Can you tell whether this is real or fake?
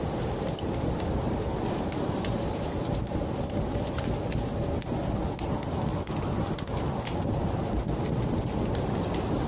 real